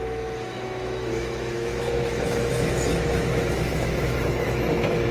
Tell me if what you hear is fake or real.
fake